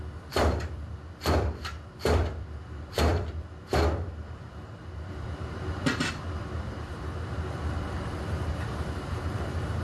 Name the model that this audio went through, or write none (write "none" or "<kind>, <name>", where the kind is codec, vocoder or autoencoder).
vocoder, BigVGAN v2